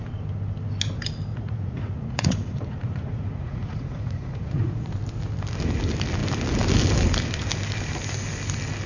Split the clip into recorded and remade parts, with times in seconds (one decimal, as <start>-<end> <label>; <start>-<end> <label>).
0.0-1.3 recorded; 1.3-4.9 remade; 4.9-8.9 recorded